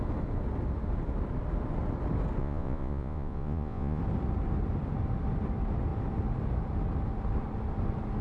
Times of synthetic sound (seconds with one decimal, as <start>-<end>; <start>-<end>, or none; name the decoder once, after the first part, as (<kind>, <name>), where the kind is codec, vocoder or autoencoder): 2.4-4.0 (vocoder, Vocos)